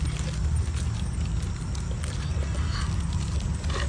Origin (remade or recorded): recorded